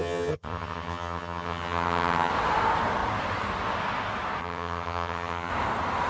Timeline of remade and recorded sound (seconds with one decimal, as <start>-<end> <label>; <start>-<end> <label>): 0.0-2.3 remade; 2.3-4.4 recorded; 4.4-5.5 remade; 5.5-6.1 recorded